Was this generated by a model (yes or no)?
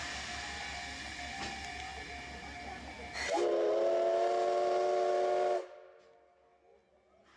no